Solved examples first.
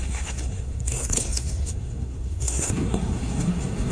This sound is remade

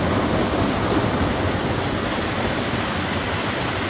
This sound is recorded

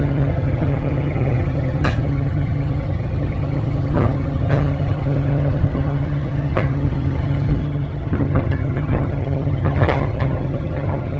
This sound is remade